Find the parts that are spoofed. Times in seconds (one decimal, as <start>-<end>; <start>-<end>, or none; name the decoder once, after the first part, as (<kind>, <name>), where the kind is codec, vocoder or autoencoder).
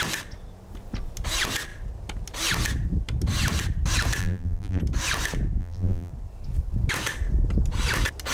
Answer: 4.2-4.8 (vocoder, BigVGAN v2); 5.6-6.1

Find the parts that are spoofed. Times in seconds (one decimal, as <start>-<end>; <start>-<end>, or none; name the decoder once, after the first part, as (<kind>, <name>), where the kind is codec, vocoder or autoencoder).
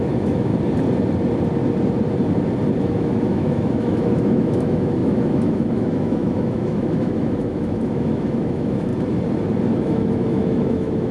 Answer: 0.0-0.5 (autoencoder, DAC-VAE); 2.8-8.9; 9.8-11.1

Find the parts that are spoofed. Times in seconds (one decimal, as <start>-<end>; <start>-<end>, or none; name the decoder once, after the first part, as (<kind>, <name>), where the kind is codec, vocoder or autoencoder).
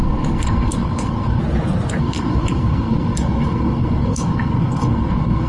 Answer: 0.0-1.4 (codec, SNAC); 2.0-5.5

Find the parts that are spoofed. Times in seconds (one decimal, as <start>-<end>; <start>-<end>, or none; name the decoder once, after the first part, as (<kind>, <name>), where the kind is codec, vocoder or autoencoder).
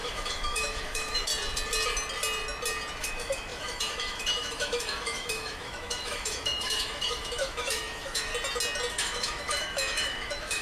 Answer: 0.0-1.3 (autoencoder, DAC-VAE); 3.0-8.3; 8.9-10.6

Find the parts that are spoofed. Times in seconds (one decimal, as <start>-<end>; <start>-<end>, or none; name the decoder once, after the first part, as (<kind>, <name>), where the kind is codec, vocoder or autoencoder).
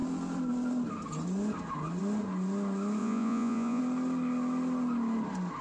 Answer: 3.0-3.8 (vocoder, Vocos)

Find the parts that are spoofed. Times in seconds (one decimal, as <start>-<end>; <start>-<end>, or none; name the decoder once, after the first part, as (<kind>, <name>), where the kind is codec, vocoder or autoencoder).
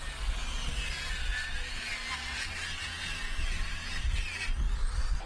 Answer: none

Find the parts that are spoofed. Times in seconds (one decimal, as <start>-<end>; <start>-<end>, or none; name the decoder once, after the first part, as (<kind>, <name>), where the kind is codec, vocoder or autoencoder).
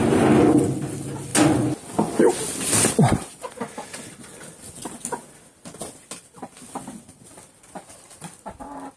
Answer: none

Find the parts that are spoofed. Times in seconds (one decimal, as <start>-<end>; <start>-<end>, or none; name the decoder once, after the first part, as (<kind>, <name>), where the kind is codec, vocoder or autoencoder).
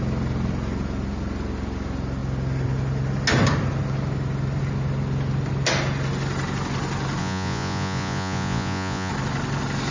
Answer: 7.2-9.1 (vocoder, Vocos)